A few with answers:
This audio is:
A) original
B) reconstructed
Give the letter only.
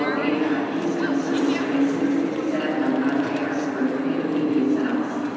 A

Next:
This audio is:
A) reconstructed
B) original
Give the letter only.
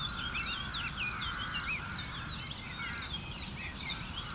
B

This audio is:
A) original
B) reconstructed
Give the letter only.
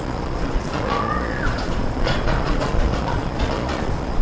B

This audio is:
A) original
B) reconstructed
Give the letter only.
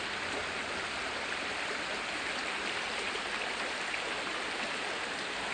A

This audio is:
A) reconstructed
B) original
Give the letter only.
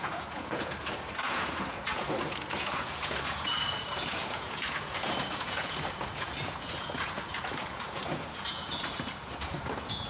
A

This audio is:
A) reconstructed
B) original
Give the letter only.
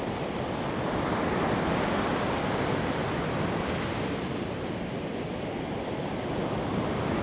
B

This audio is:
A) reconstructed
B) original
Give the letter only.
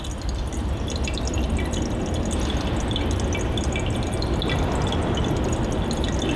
B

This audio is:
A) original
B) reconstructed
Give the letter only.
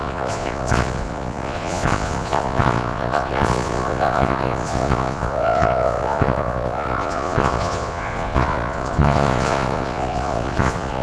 B